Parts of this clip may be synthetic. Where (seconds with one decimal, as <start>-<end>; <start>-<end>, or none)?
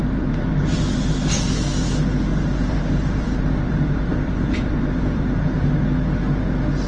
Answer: 0.0-0.5; 2.3-5.7